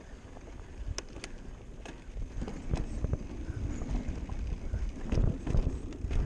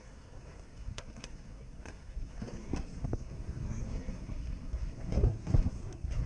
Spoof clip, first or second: second